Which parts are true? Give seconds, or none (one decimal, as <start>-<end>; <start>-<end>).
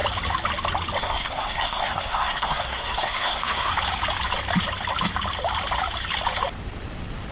0.0-1.0; 3.7-7.3